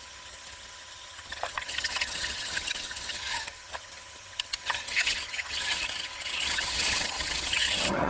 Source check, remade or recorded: remade